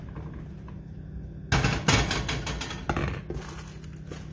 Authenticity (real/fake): real